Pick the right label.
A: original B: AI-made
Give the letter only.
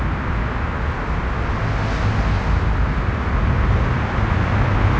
A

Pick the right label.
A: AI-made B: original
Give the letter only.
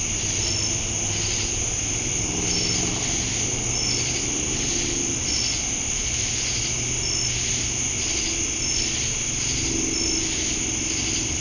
B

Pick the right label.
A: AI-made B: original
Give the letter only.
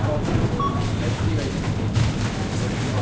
B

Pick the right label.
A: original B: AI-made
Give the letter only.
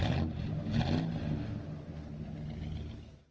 A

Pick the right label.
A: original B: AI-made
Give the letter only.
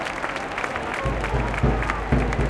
A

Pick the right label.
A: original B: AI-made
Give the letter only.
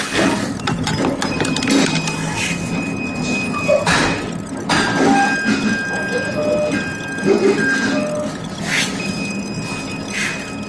A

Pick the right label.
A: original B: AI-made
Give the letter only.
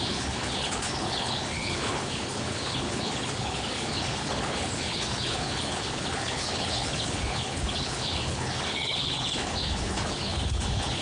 B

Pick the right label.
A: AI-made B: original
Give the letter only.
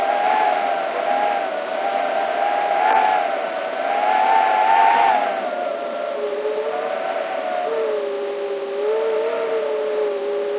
B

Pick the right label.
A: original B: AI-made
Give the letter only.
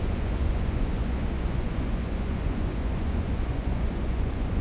B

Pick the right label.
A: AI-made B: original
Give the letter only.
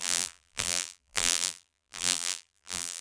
A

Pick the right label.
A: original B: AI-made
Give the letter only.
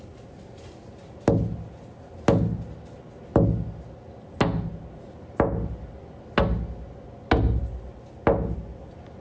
A